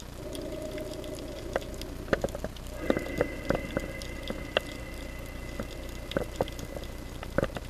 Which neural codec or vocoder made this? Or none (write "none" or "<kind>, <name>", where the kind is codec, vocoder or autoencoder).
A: none